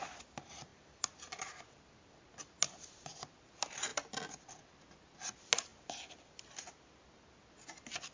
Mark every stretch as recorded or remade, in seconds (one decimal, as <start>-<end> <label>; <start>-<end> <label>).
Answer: 0.0-0.7 recorded; 0.7-2.4 remade; 2.4-5.7 recorded; 5.7-7.5 remade; 7.5-8.1 recorded